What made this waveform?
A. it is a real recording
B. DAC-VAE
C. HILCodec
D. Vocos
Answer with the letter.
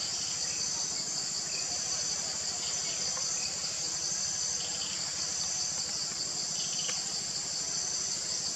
A